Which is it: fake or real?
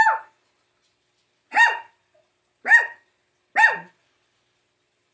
real